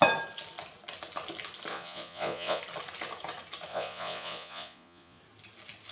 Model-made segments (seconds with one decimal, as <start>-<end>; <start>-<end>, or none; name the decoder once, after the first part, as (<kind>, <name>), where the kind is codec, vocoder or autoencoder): 1.7-2.6 (vocoder, Vocos); 3.7-5.2